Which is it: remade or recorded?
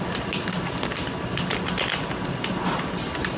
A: recorded